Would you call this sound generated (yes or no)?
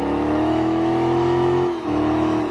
yes